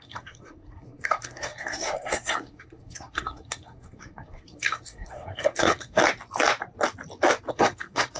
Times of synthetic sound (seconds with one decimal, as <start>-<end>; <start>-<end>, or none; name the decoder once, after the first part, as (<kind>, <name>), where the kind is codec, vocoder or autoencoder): 0.0-6.0 (codec, SNAC); 7.5-8.2